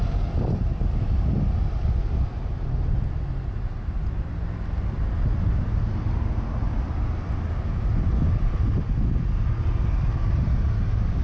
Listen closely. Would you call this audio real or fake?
real